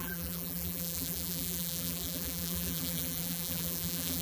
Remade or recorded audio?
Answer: remade